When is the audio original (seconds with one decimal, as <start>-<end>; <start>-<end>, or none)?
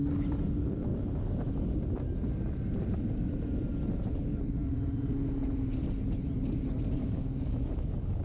0.0-7.0